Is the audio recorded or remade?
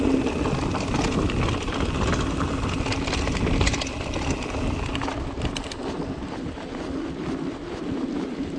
recorded